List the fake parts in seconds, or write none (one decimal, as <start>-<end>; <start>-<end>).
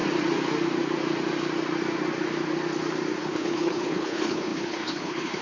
3.2-5.4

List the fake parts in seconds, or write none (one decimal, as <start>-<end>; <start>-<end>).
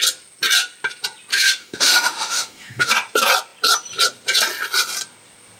1.3-2.9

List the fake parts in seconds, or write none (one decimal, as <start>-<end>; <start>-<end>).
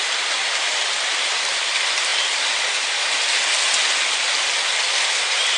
none